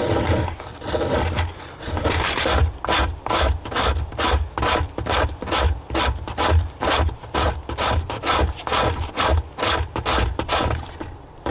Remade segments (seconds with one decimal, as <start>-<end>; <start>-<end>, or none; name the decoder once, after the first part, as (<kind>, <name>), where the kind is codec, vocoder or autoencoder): none